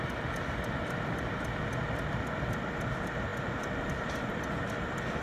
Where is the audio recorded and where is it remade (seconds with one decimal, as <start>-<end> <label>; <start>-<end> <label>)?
0.0-5.2 remade